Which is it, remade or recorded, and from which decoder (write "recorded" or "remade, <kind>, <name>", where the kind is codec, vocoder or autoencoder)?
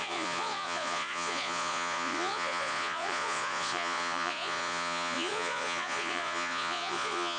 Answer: remade, vocoder, Vocos